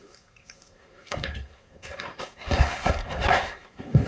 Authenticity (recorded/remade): remade